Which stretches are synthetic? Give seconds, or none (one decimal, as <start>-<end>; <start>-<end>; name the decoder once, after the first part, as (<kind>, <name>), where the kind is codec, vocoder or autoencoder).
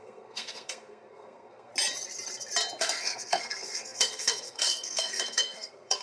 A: 0.0-1.7 (codec, SNAC); 2.8-6.0